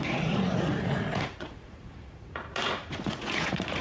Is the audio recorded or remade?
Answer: remade